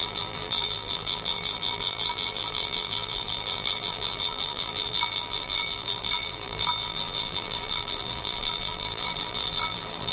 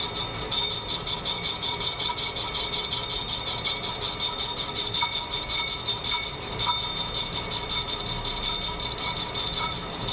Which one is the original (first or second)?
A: second